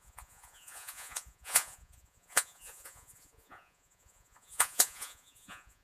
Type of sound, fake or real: fake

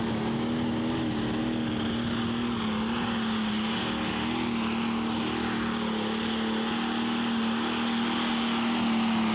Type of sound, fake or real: real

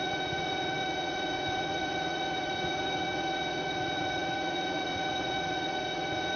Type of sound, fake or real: fake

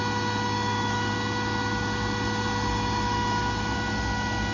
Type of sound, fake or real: real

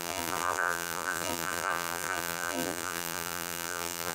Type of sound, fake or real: fake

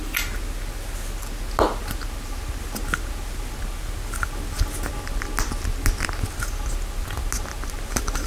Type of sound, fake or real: real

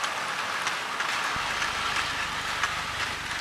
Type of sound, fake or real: real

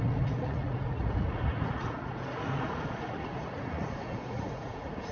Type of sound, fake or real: fake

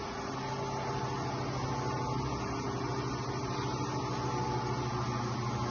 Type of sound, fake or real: real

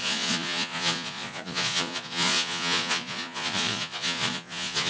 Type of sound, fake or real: fake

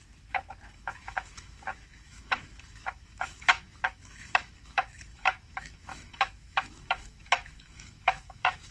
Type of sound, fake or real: fake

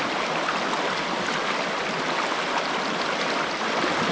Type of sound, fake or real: real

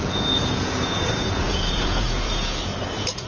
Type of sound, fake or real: fake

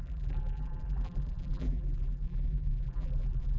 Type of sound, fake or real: fake